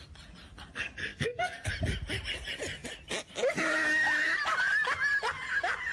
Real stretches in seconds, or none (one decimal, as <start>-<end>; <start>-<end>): 0.0-1.1; 1.7-5.9